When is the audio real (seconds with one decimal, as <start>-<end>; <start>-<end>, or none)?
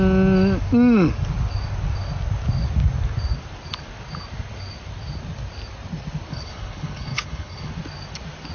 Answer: 0.0-6.3; 7.7-8.5